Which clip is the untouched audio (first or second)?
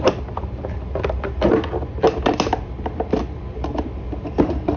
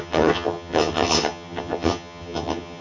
first